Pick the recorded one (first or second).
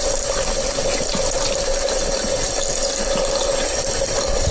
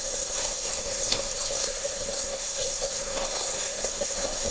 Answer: first